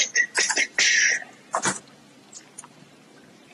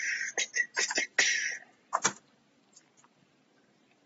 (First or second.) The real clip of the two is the second